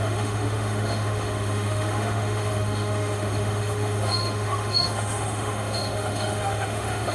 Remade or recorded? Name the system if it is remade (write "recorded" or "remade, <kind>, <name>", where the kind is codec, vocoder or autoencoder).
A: remade, autoencoder, DAC-VAE